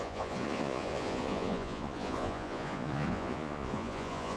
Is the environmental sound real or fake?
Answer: fake